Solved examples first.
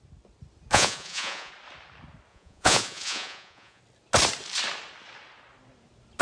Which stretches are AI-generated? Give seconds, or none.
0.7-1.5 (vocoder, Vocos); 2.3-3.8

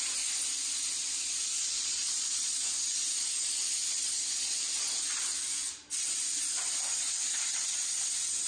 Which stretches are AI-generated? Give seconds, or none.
1.6-2.8 (vocoder, Vocos)

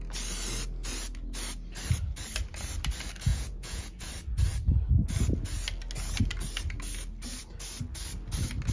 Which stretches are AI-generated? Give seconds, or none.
3.3-4.1 (vocoder, Vocos)

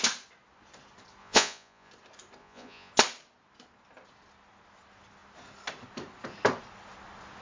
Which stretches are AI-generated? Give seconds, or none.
1.2-1.9 (vocoder, Vocos); 2.4-2.9